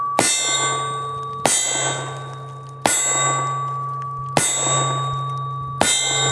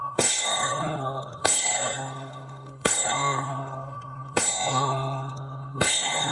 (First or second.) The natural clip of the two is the first